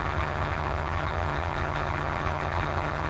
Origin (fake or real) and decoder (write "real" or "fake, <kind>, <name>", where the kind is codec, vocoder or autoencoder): fake, vocoder, HiFi-GAN